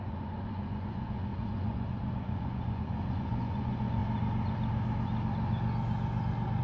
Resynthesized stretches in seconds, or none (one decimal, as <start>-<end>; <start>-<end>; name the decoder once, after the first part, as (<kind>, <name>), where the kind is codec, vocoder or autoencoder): 0.0-4.0 (vocoder, Vocos)